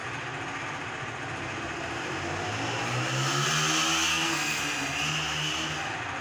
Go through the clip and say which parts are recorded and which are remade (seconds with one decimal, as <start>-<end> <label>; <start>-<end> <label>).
0.0-4.1 recorded; 4.1-4.6 remade; 4.6-6.2 recorded